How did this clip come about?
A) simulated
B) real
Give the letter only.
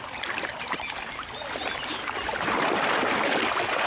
B